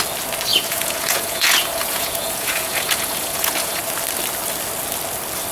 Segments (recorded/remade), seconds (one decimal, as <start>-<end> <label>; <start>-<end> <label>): 0.0-0.5 recorded; 0.5-3.8 remade; 3.8-5.5 recorded